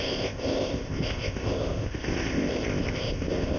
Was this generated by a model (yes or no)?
yes